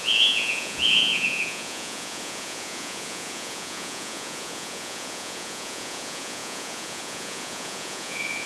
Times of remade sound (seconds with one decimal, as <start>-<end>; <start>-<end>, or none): 0.0-8.5